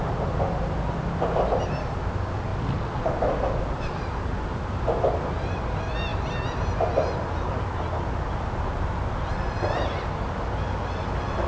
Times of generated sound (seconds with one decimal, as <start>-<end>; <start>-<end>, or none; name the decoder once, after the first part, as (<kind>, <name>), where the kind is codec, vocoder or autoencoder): none